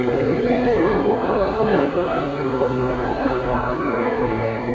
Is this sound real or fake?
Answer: fake